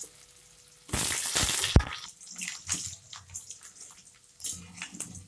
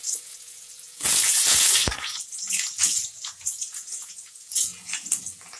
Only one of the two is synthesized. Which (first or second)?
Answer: second